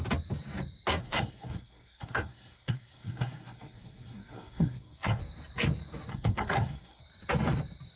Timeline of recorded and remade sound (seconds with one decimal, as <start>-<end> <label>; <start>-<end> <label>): 0.0-1.0 recorded; 1.0-5.2 remade; 5.2-6.1 recorded; 6.1-7.0 remade; 7.0-8.0 recorded